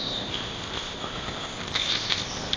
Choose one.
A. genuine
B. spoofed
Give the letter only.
B